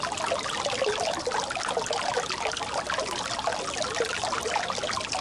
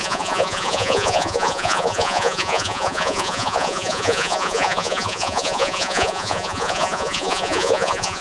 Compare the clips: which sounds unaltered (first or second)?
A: first